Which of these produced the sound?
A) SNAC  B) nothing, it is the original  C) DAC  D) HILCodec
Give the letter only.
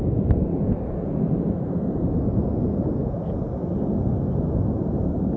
B